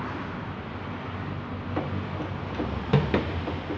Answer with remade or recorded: recorded